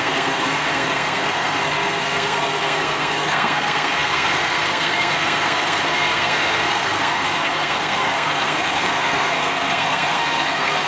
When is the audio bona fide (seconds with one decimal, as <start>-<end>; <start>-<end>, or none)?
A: none